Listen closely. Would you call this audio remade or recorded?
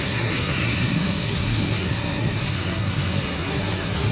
remade